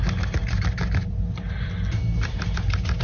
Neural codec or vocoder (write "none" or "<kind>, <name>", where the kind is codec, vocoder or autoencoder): none